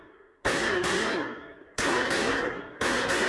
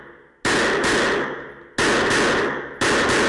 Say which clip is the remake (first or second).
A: first